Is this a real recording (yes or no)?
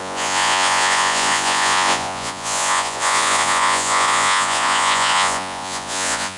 no